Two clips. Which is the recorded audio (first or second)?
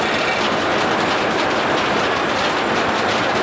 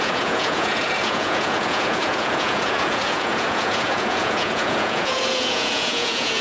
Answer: first